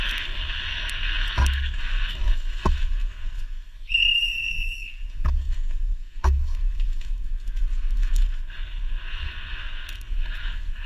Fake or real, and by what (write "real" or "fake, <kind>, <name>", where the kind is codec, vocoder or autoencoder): fake, codec, SNAC